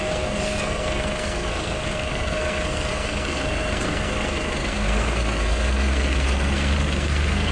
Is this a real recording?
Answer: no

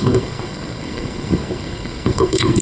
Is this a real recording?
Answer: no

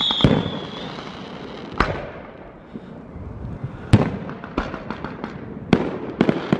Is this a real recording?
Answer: yes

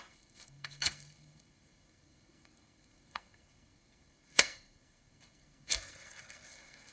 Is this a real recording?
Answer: no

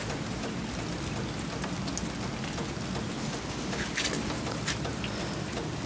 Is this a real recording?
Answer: yes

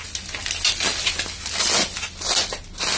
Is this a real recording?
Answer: yes